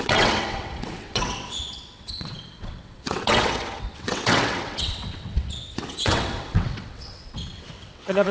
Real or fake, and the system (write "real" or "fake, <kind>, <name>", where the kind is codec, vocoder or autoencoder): fake, vocoder, WaveNeXt